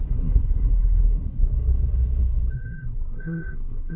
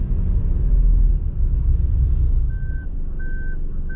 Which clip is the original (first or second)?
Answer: second